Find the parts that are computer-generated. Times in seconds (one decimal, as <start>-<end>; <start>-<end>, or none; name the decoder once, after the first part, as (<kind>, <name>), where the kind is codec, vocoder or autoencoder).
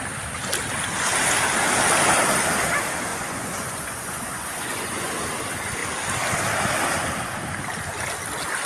3.1-5.1 (vocoder, Vocos)